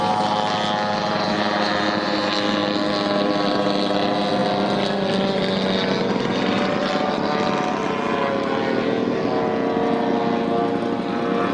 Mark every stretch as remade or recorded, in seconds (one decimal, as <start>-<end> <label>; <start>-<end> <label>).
0.0-11.5 recorded